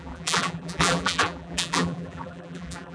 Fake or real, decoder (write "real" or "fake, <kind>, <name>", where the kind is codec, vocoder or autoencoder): fake, vocoder, BigVGAN v2